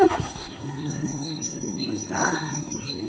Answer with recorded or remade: remade